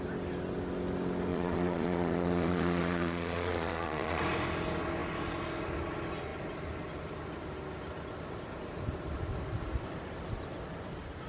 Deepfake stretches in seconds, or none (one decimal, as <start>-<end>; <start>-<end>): 1.3-4.2